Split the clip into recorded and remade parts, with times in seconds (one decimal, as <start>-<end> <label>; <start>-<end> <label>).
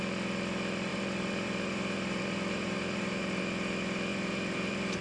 0.0-0.9 recorded; 0.9-3.4 remade; 3.4-4.1 recorded; 4.1-5.0 remade